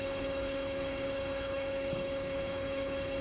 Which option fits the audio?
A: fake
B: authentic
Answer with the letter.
A